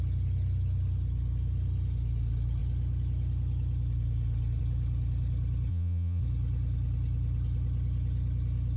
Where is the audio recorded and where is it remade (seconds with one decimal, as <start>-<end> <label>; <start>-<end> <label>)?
0.0-5.7 recorded; 5.7-6.2 remade; 6.2-8.8 recorded